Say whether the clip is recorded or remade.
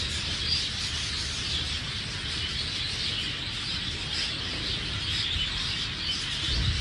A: recorded